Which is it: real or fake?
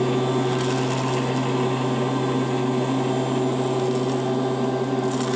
real